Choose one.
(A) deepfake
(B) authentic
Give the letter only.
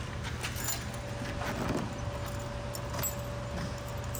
B